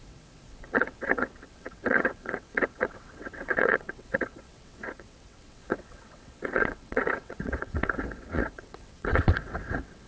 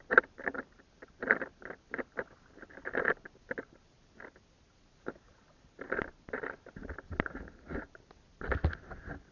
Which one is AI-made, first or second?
first